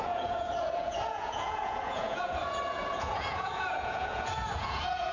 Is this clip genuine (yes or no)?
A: no